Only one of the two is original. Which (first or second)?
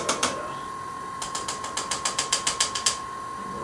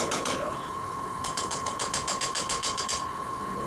first